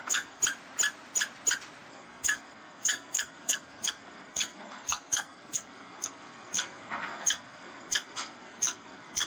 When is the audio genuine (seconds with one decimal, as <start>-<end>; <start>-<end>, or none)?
0.4-1.9